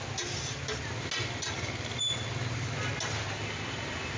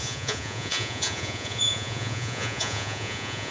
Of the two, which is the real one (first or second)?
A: first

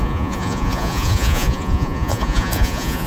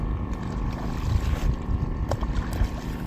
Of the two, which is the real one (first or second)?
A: second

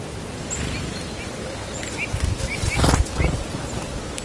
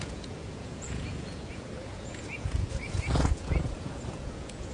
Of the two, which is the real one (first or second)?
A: first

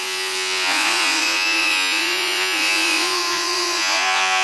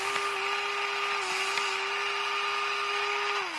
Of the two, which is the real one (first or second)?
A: second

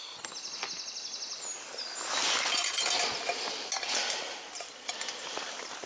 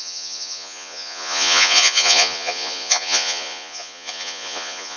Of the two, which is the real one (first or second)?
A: first